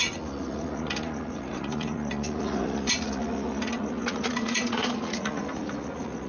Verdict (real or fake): fake